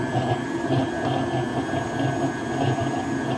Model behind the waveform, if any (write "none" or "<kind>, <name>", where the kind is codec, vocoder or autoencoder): none